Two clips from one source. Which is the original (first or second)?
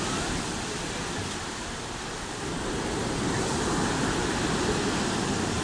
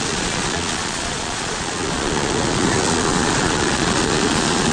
first